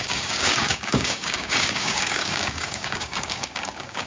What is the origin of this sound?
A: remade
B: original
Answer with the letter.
A